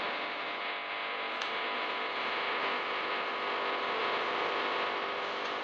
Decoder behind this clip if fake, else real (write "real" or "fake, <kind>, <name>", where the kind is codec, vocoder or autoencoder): real